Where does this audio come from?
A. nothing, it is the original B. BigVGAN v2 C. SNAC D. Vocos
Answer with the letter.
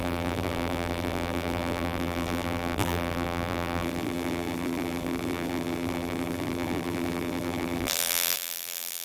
B